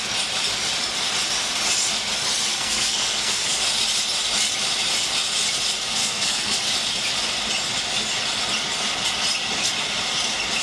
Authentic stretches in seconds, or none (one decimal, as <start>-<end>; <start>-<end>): 0.0-2.5; 3.7-6.0; 6.6-10.6